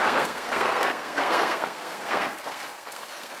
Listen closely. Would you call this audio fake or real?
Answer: fake